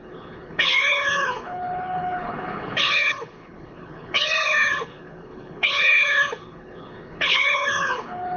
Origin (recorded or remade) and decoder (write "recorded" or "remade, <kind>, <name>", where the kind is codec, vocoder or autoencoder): remade, codec, HILCodec